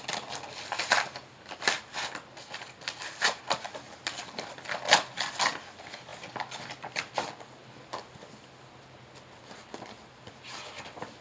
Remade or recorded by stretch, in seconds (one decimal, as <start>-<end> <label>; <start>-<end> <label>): 0.0-11.2 recorded